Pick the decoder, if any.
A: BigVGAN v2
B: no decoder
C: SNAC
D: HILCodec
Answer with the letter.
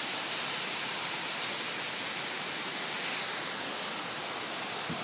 B